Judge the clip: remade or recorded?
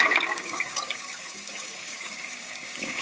remade